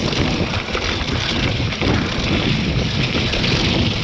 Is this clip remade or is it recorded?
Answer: recorded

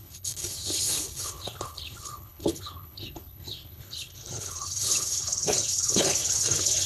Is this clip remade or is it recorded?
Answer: remade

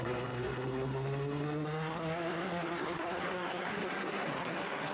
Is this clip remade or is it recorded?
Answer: remade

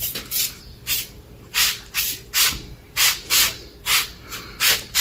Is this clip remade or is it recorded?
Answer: remade